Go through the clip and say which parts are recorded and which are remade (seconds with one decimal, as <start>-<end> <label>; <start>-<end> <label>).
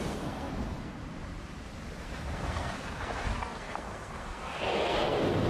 0.0-1.0 remade; 1.0-2.0 recorded; 2.0-5.5 remade